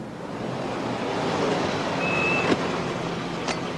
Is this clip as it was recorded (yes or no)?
yes